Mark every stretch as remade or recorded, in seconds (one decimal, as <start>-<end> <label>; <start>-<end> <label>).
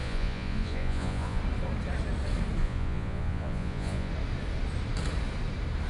0.0-1.4 remade; 1.4-2.6 recorded; 2.6-4.1 remade; 4.1-5.9 recorded